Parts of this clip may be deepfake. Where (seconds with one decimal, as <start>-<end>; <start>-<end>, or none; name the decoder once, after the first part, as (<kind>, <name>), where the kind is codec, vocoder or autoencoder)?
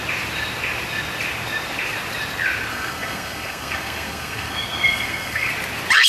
2.7-5.5 (codec, SNAC)